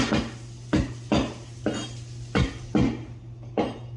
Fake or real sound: real